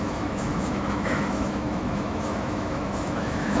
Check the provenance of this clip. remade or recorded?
remade